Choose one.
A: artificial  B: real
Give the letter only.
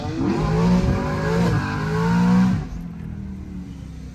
B